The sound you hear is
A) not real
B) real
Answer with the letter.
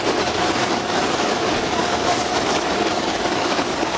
A